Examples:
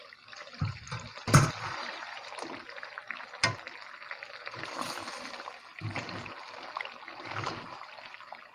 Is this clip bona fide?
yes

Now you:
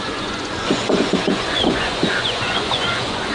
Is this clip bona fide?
no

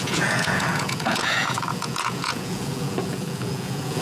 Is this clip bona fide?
no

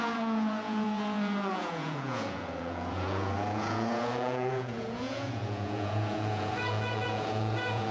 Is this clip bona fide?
no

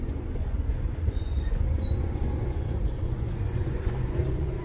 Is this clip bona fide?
no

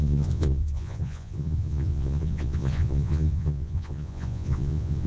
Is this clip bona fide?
no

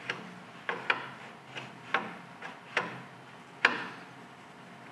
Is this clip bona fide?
yes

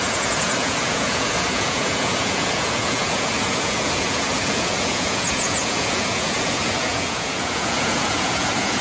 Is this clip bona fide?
no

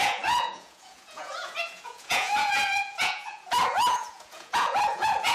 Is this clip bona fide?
no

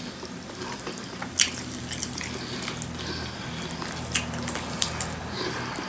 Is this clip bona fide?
yes